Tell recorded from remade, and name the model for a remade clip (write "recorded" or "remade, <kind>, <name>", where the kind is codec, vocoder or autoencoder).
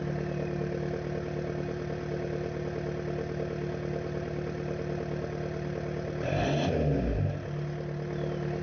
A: recorded